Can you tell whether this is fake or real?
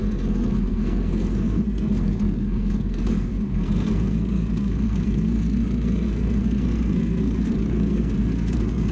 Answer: fake